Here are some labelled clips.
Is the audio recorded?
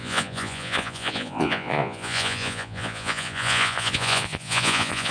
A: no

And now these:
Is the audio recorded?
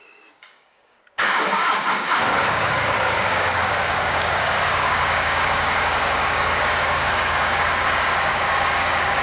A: no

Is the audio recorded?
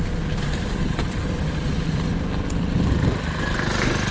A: yes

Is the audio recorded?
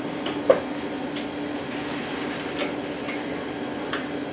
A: yes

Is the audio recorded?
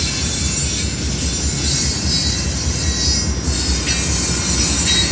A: yes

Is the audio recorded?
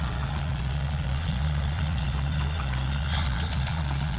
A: no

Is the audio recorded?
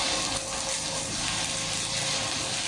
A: no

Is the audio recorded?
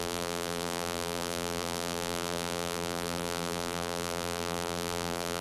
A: no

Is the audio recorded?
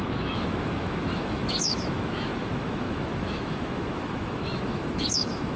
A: no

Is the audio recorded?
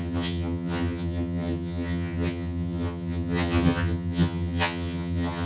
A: no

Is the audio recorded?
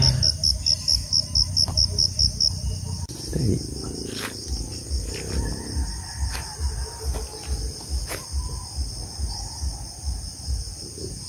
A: yes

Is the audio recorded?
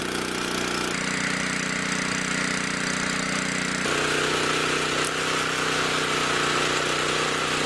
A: yes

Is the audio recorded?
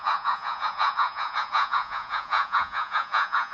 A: no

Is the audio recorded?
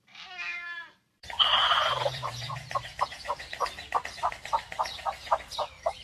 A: no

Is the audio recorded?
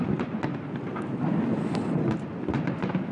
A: yes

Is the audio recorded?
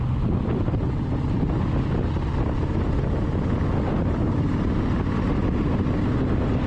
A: yes